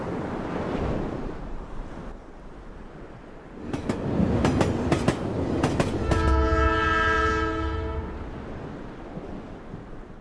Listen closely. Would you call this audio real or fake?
real